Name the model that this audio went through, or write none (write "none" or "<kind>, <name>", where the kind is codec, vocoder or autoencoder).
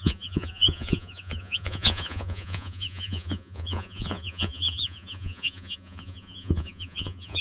vocoder, Vocos